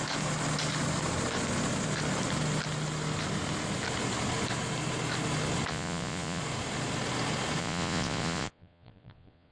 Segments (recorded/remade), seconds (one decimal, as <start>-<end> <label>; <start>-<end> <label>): 0.0-5.7 recorded; 5.7-6.4 remade; 6.4-7.6 recorded; 7.6-9.5 remade